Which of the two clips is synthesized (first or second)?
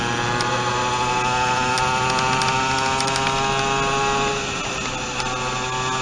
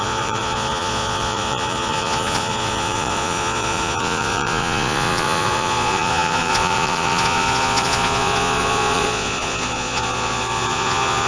second